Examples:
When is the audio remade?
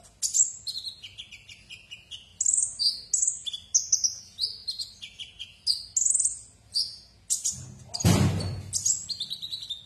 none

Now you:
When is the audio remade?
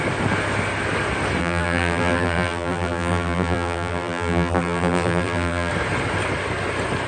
1.4-5.7 (vocoder, BigVGAN v2)